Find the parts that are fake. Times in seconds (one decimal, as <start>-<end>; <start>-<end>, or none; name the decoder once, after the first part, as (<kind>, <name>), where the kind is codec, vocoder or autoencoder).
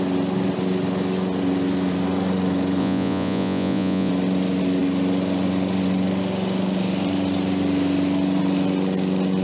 2.8-4.1 (vocoder, Vocos)